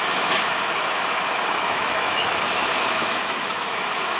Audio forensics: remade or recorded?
remade